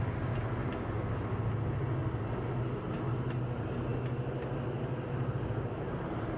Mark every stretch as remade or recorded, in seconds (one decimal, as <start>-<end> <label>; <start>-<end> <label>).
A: 0.0-6.4 recorded